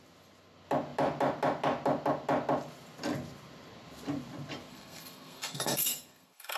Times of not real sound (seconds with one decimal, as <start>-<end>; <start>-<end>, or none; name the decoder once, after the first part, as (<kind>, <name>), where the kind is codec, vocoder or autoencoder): 4.7-6.6 (codec, SNAC)